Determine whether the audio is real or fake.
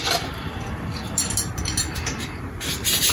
fake